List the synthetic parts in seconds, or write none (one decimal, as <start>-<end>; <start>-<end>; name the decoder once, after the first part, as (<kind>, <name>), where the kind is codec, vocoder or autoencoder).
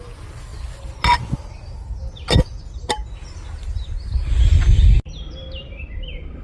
none